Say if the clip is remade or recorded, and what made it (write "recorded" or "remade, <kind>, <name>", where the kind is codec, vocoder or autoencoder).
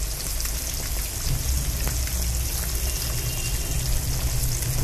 recorded